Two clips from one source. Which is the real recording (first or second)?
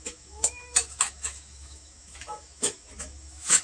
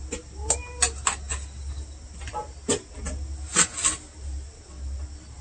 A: second